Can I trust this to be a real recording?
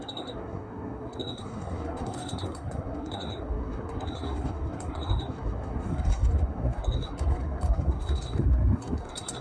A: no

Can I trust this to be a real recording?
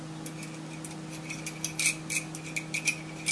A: yes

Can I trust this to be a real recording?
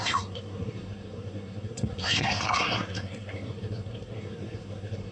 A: no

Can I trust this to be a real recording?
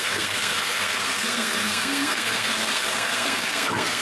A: no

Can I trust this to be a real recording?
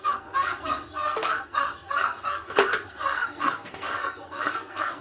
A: no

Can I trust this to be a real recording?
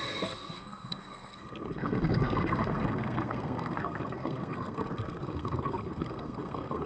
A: no